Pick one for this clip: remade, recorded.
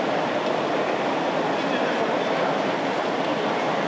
recorded